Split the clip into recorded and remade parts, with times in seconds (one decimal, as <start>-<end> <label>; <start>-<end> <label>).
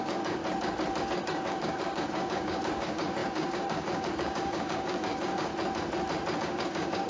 0.0-0.4 remade; 0.4-1.0 recorded; 1.0-5.5 remade; 5.5-6.4 recorded; 6.4-7.1 remade